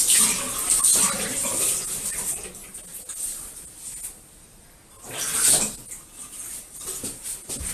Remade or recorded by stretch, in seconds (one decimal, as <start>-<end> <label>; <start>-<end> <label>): 0.0-7.7 recorded